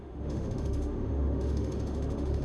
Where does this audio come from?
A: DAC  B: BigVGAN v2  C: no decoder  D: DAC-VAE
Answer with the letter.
D